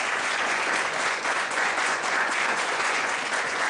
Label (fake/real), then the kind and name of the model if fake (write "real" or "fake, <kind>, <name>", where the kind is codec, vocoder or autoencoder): fake, vocoder, Vocos